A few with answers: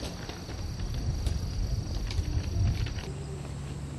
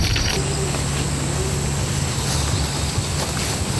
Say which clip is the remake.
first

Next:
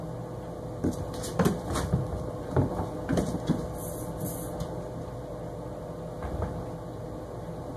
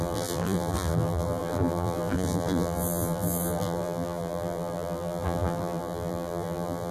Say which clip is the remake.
second